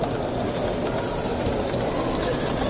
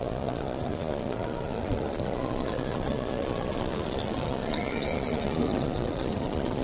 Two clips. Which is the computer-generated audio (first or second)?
second